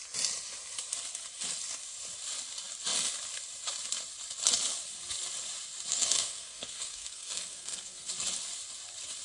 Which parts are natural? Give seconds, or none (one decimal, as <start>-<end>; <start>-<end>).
0.0-5.9; 8.1-9.2